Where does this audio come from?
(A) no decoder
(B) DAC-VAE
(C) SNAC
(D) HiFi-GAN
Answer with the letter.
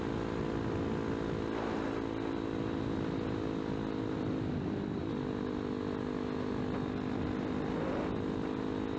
A